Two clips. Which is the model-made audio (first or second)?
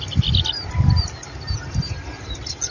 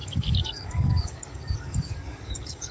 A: second